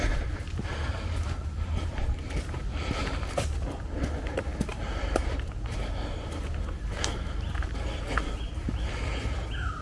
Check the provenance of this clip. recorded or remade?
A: recorded